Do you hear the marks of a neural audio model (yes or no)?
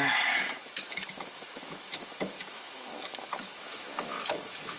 yes